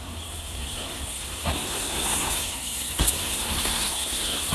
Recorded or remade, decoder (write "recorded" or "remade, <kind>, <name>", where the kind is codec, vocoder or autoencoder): remade, codec, SNAC